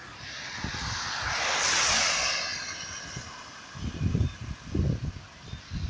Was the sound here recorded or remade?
recorded